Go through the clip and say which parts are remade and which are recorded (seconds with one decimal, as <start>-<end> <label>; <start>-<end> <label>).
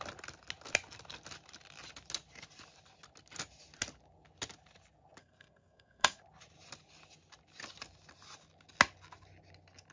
0.0-5.2 recorded; 5.2-6.2 remade; 6.2-9.9 recorded